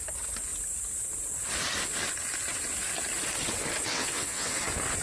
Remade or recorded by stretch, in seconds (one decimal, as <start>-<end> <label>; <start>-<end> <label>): 0.0-3.9 recorded; 3.9-4.6 remade; 4.6-5.0 recorded